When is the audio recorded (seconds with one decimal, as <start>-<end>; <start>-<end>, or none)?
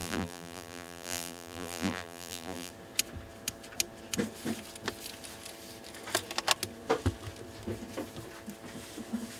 2.7-9.4